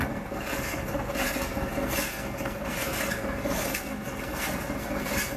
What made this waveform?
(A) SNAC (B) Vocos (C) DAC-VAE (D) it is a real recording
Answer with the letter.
A